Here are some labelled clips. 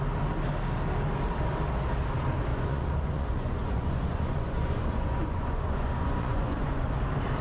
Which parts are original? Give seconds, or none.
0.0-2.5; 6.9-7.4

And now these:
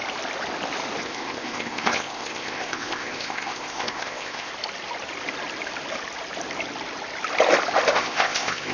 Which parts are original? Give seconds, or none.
0.0-1.0; 4.5-7.9

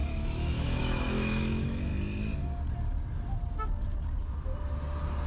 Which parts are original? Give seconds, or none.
1.9-5.3

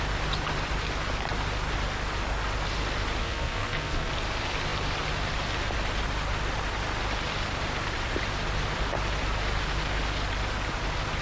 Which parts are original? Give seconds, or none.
0.0-3.2; 4.1-11.2